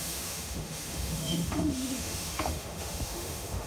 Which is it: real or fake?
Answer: fake